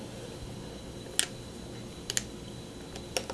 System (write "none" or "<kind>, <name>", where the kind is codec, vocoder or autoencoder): none